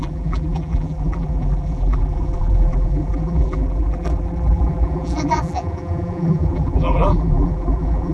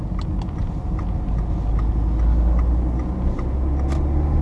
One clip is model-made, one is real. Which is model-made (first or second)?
first